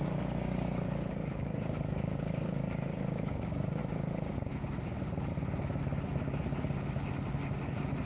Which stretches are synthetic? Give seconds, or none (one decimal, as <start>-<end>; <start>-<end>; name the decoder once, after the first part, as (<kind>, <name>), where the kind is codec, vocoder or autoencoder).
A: 0.0-3.8 (codec, DAC); 4.8-5.3